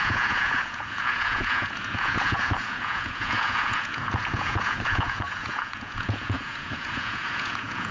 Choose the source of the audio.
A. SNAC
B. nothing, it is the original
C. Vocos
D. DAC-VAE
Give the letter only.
C